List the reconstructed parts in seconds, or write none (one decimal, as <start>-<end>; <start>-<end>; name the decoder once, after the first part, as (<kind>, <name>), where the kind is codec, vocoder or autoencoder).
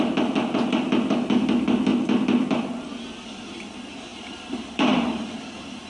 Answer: 4.1-5.9 (vocoder, BigVGAN v2)